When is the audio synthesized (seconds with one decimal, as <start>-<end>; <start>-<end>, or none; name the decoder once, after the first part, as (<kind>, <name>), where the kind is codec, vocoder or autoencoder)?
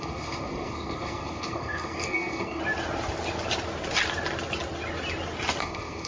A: 0.0-2.6 (codec, SNAC); 5.6-6.1